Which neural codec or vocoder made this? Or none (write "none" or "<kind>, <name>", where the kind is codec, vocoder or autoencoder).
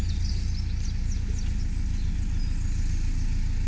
none